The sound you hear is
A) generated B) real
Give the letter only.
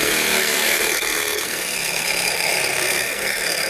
A